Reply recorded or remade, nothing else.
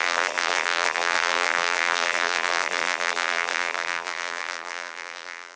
remade